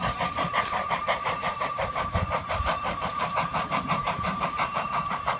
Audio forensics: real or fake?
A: fake